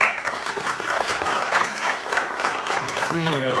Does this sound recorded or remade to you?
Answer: remade